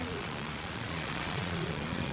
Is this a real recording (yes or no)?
no